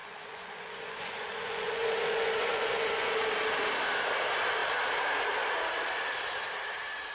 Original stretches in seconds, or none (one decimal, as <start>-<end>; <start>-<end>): 3.1-7.1